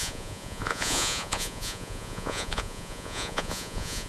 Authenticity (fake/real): fake